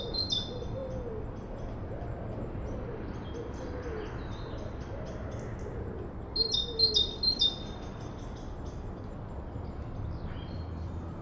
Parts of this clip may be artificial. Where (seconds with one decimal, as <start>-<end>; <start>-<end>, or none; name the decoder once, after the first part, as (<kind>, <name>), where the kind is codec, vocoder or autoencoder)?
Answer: none